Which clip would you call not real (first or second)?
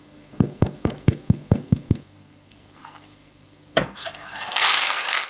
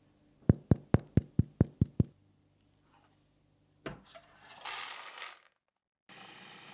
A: first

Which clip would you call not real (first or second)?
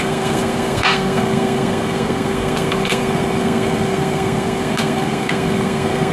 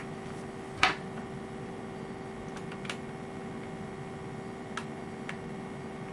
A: first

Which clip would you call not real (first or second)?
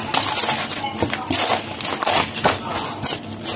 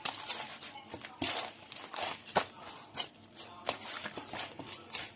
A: second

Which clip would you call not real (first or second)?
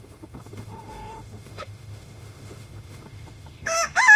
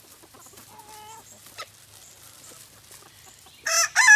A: first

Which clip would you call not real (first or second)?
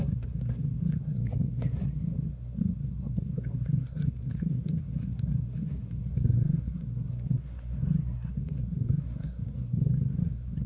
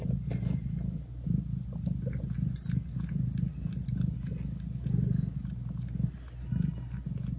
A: first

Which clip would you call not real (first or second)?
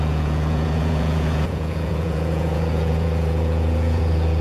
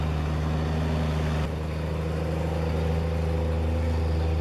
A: first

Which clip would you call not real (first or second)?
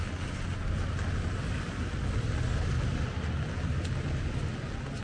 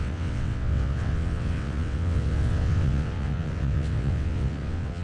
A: second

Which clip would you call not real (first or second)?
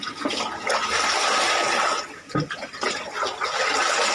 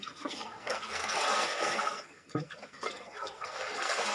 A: second